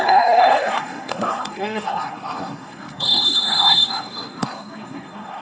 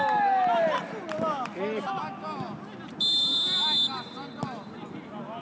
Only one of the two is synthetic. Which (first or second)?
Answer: first